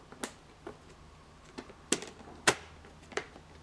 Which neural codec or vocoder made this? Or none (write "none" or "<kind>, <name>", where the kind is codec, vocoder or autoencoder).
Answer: none